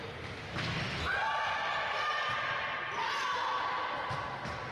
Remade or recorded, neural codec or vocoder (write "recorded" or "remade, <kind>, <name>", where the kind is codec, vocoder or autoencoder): recorded